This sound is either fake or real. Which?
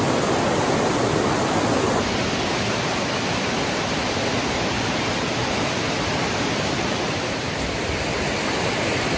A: real